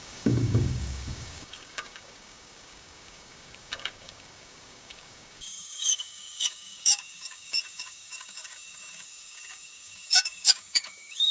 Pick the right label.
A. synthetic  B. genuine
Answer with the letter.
A